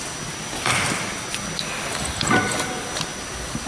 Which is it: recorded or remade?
recorded